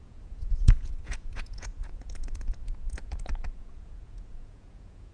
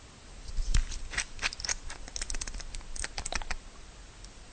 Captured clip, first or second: second